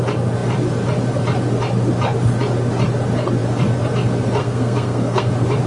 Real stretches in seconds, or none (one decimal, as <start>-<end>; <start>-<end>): 0.0-4.4; 5.3-5.7